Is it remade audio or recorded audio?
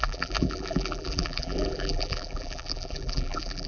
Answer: remade